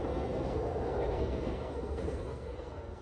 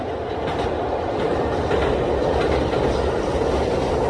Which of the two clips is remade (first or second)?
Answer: first